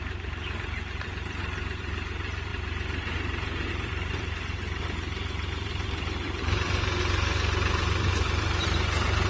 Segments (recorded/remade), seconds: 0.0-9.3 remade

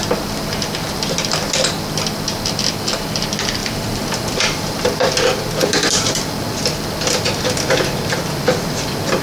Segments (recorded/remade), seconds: 0.0-3.6 recorded; 3.6-5.1 remade; 5.1-5.6 recorded; 5.6-6.3 remade; 6.3-9.2 recorded

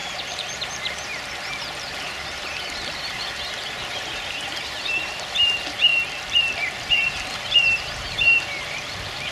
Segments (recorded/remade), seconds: 0.0-5.9 remade; 5.9-6.9 recorded; 6.9-9.3 remade

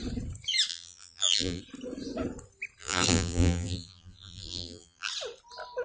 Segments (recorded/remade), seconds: 0.0-0.7 recorded; 0.7-1.6 remade; 1.6-2.8 recorded; 2.8-5.1 remade; 5.1-5.8 recorded